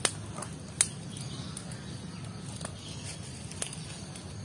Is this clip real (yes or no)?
yes